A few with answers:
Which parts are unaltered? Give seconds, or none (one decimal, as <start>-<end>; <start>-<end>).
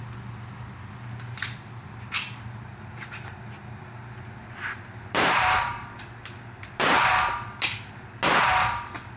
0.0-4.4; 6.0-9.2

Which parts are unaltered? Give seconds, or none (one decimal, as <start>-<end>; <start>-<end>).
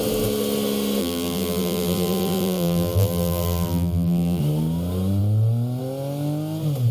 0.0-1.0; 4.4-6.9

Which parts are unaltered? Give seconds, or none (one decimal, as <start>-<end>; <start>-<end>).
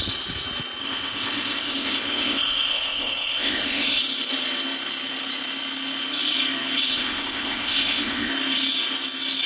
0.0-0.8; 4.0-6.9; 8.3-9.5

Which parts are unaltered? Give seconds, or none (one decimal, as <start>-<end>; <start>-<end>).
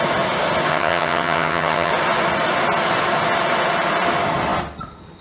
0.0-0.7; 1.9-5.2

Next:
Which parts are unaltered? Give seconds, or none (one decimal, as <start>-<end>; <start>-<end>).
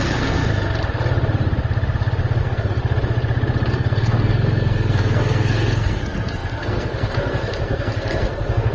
0.4-2.4; 2.8-3.7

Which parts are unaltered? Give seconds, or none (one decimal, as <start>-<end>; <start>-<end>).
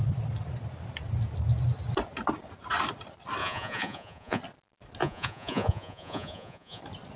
0.0-3.4; 4.4-5.0; 6.8-7.2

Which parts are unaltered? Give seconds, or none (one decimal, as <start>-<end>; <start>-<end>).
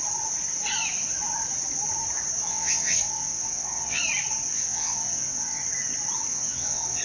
0.0-2.4; 4.0-4.5; 5.6-6.3